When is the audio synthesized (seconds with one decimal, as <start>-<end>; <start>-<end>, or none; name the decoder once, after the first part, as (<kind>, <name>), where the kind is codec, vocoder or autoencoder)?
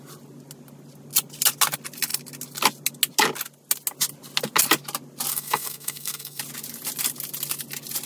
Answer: 5.3-6.4 (codec, SNAC)